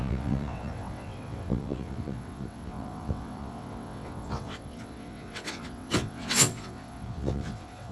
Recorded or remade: remade